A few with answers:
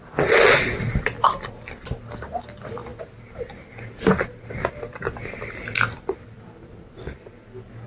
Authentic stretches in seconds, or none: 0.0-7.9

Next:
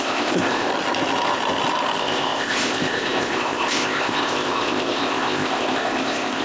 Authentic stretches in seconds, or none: 0.7-2.0